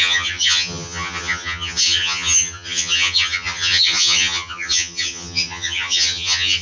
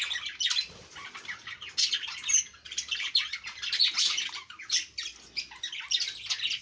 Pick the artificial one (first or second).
first